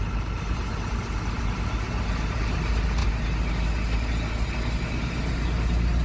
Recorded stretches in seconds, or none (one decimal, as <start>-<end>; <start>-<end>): 0.0-6.0